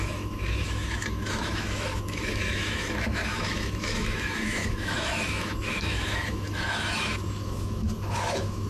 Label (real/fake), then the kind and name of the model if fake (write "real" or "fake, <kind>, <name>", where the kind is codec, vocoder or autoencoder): fake, autoencoder, DAC-VAE